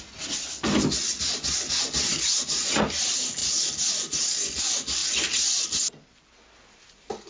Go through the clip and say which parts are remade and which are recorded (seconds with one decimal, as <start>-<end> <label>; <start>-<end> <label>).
0.0-7.3 recorded